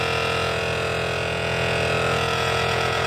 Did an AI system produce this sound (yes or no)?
yes